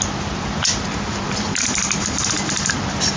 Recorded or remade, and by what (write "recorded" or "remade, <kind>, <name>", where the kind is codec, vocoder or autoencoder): recorded